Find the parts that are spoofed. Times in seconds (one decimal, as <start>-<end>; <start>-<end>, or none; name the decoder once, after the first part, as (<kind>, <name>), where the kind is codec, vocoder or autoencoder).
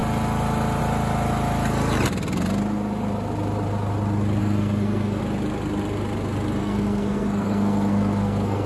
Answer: 4.4-5.2 (codec, SNAC); 6.6-8.7